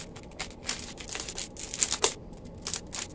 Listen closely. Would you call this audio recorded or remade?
recorded